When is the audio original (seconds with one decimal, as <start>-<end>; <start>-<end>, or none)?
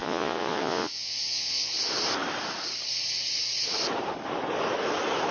1.7-5.3